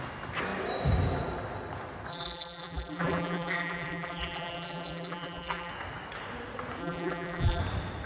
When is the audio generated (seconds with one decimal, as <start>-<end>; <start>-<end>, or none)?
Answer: 2.1-5.7; 6.8-7.6